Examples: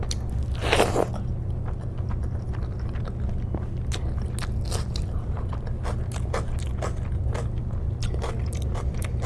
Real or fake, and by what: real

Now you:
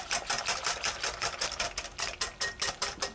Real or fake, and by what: real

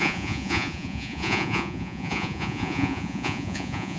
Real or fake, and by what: fake, vocoder, Vocos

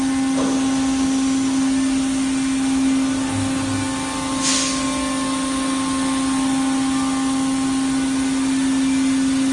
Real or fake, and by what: real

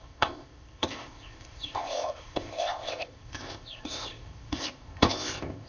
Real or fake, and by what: fake, codec, ZipCodec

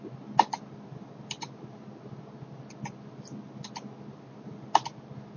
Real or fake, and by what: real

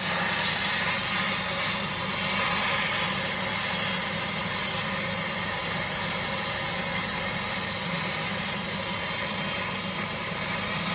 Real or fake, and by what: real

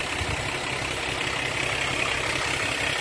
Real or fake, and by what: real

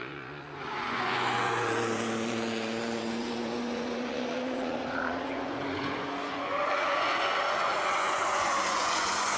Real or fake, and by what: fake, vocoder, Vocos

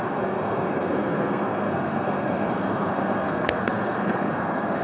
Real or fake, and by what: fake, codec, SNAC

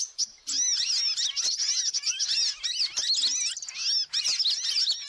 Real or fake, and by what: real